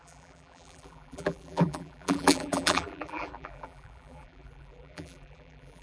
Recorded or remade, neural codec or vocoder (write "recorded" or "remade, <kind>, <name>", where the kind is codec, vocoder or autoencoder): remade, vocoder, BigVGAN v2